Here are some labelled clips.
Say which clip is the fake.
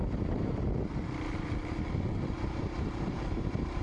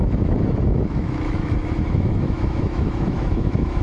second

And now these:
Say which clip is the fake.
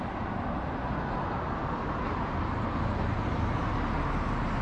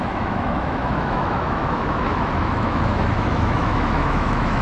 second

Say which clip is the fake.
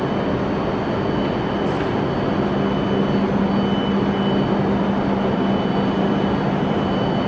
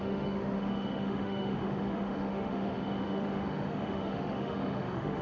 second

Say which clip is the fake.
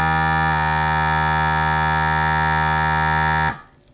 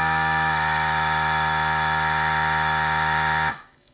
second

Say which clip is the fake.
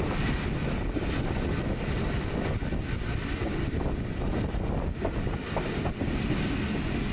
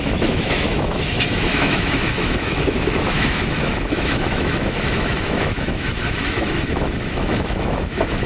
second